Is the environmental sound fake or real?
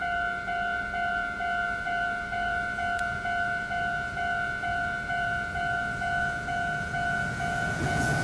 fake